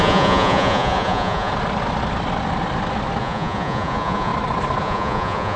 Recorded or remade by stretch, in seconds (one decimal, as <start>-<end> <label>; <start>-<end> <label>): 0.0-1.5 remade; 1.5-3.2 recorded; 3.2-4.3 remade; 4.3-4.8 recorded; 4.8-5.6 remade